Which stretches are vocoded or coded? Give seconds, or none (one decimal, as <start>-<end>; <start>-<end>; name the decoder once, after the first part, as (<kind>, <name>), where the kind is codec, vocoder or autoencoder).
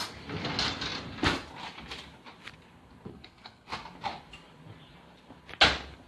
3.1-3.7 (codec, SNAC)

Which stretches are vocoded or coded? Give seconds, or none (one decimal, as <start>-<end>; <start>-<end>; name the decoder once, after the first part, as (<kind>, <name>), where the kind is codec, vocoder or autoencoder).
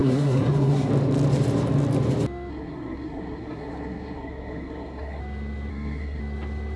0.0-0.9 (codec, SNAC); 2.5-5.2; 5.7-6.2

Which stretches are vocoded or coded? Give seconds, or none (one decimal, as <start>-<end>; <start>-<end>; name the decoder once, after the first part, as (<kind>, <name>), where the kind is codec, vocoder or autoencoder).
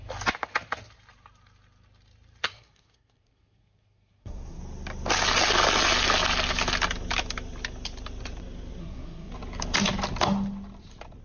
2.4-4.6 (codec, SNAC); 8.8-9.3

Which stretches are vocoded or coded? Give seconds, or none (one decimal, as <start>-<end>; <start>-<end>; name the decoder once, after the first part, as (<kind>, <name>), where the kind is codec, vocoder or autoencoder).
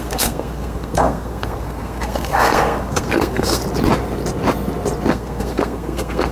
0.0-3.6 (codec, SNAC); 5.1-6.3